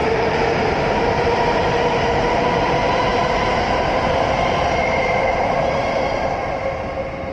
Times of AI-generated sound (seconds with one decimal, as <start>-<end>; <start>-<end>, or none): 0.0-2.4; 3.1-6.7